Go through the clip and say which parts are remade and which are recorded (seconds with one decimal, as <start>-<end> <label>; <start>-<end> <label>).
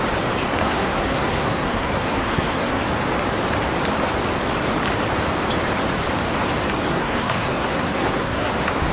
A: 0.0-0.6 recorded; 0.6-2.8 remade; 2.8-6.9 recorded; 6.9-8.5 remade; 8.5-8.9 recorded